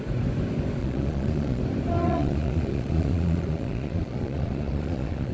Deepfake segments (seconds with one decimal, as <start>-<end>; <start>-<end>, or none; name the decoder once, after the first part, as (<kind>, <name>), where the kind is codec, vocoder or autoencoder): 0.8-1.6 (vocoder, Vocos); 2.0-5.3